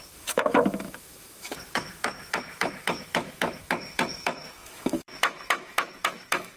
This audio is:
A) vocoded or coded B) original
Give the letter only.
A